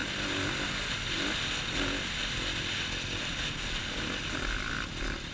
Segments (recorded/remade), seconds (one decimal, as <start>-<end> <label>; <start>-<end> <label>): 0.0-5.3 recorded